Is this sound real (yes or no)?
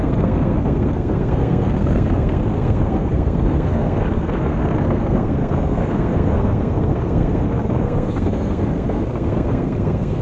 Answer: no